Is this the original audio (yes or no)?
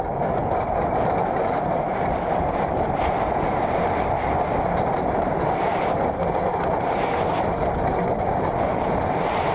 yes